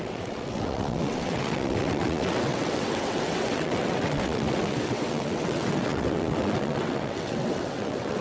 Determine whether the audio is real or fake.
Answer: fake